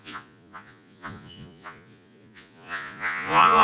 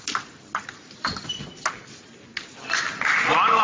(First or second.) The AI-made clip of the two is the first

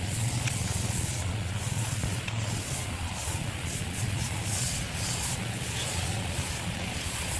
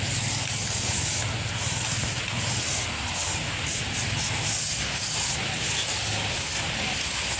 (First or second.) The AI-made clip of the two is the first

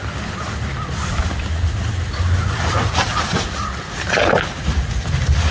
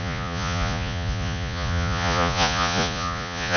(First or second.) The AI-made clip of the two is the second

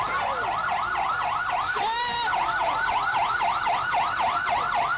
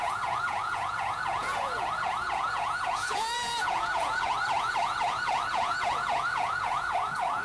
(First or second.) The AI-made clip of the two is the second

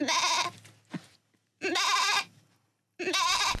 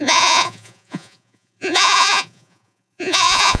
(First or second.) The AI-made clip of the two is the second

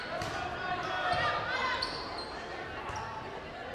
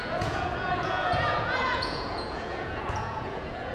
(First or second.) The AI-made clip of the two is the second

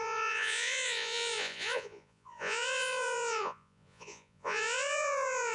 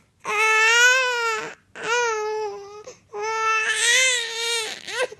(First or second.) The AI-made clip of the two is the first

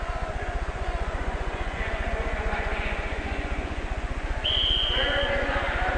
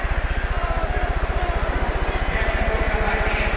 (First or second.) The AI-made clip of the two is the first